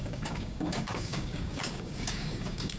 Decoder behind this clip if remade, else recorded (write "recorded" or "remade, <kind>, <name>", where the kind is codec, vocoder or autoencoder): remade, codec, DAC